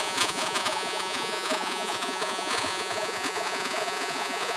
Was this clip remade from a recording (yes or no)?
yes